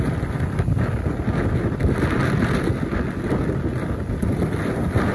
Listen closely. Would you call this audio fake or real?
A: real